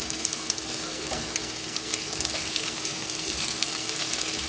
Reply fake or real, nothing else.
fake